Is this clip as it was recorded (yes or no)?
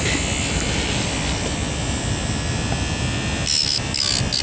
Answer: yes